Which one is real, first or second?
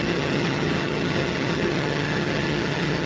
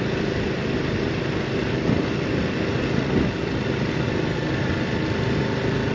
second